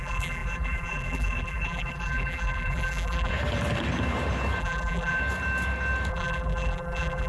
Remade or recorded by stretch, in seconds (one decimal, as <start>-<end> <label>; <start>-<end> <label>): 0.0-3.3 remade; 3.3-4.6 recorded; 4.6-5.2 remade; 5.2-6.1 recorded; 6.1-7.3 remade